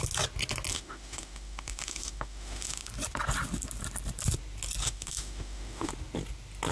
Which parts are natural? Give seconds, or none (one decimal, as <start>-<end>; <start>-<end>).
0.0-0.7; 2.9-4.8; 5.9-6.7